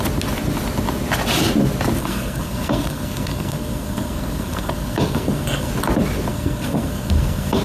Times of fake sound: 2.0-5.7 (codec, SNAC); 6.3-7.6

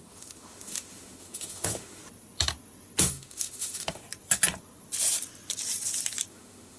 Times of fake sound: 0.0-2.0 (autoencoder, DAC-VAE); 3.0-4.0; 6.3-6.8

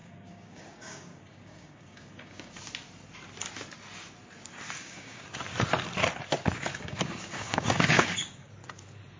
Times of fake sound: 0.0-2.6 (codec, DAC); 4.8-5.3; 6.7-8.5

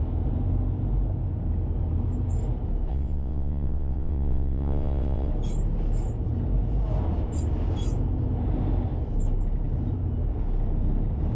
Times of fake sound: 2.9-5.3 (vocoder, WaveNeXt)